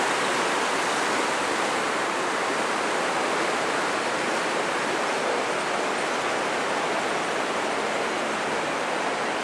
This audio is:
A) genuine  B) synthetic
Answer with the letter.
A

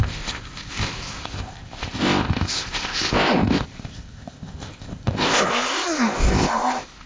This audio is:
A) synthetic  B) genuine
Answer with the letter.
A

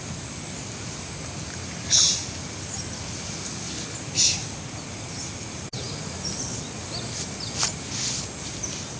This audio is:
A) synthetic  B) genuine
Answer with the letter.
B